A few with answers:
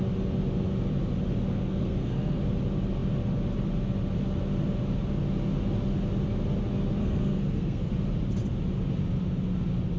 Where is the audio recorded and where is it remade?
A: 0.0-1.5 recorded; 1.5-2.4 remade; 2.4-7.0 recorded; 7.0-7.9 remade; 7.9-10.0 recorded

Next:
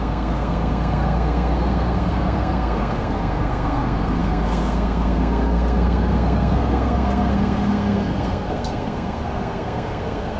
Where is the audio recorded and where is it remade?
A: 0.0-10.4 remade

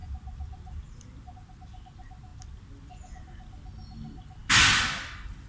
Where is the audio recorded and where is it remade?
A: 0.0-5.5 recorded